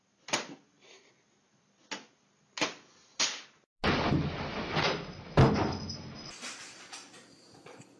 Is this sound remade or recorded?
recorded